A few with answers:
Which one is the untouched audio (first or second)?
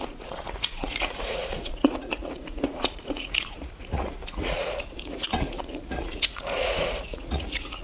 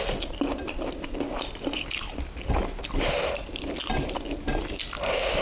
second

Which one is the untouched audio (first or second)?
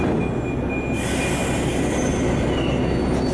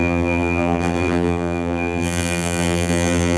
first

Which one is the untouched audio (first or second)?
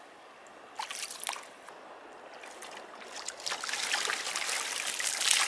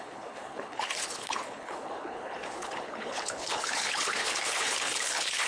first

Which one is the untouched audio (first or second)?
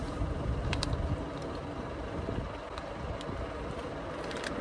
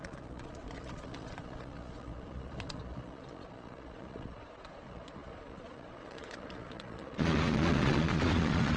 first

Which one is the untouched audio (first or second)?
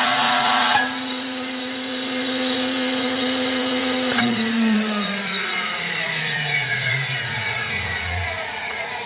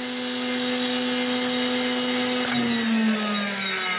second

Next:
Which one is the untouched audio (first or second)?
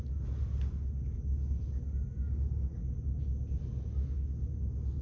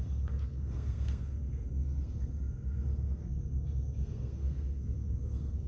first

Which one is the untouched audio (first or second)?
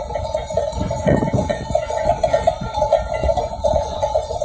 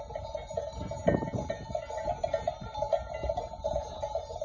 second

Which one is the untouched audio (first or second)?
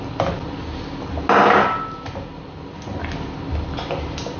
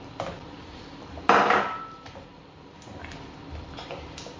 first